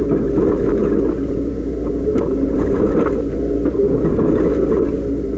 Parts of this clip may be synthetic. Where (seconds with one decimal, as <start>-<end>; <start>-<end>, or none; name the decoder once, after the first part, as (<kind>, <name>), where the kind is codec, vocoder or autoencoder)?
none